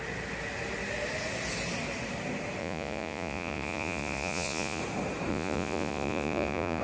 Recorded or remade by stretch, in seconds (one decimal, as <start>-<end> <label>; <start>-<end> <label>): 0.0-2.6 recorded; 2.6-4.8 remade; 4.8-5.3 recorded; 5.3-6.8 remade